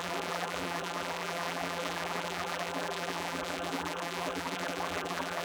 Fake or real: fake